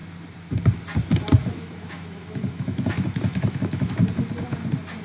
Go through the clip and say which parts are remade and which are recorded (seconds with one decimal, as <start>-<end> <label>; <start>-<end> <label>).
0.0-1.4 recorded; 1.4-3.9 remade; 3.9-5.0 recorded